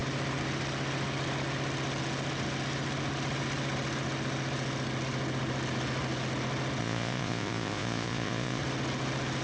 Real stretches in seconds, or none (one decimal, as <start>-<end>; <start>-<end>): 0.0-6.8; 8.6-9.4